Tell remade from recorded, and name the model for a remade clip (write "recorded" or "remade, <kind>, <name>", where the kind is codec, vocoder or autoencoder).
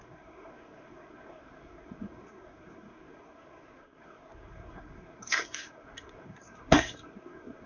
remade, codec, SNAC